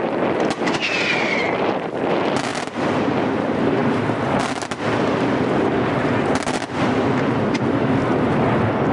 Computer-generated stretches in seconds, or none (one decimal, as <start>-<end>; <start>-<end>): none